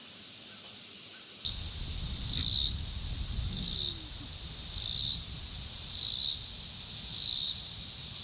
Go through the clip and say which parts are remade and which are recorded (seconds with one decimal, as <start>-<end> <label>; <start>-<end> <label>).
0.0-8.2 recorded